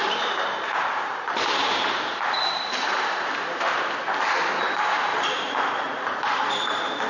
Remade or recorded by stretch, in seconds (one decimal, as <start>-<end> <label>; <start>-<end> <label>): 0.0-3.9 remade; 3.9-5.1 recorded; 5.1-7.1 remade